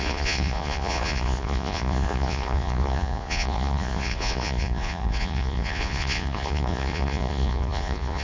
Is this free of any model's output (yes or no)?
no